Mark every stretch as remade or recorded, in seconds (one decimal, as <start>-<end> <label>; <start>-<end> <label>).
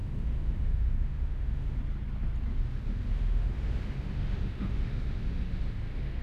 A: 0.0-1.8 remade; 1.8-2.5 recorded; 2.5-6.2 remade